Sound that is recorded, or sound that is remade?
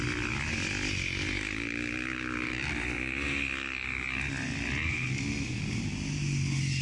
recorded